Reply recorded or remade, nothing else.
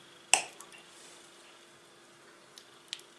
recorded